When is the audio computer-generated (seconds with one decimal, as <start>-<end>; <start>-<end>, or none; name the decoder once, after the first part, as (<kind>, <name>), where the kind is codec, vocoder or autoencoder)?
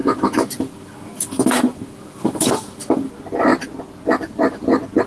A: 0.0-3.1 (autoencoder, DAC-VAE)